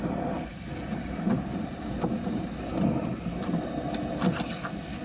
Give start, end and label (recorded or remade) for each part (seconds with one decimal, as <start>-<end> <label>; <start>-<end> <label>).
0.0-0.5 recorded; 0.5-2.8 remade; 2.8-5.0 recorded